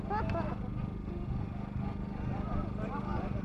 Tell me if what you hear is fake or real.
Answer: real